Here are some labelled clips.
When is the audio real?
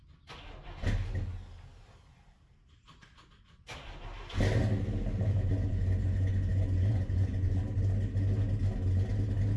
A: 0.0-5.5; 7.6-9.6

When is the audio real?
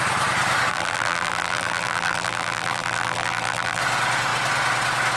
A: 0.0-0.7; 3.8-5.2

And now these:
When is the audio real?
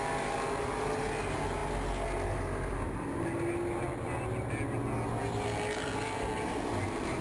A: 0.0-7.2